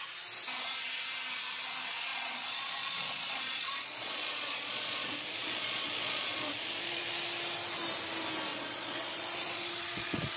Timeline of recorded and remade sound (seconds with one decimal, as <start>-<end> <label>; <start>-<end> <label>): 0.0-2.1 recorded; 2.1-7.1 remade; 7.1-8.5 recorded; 8.5-10.4 remade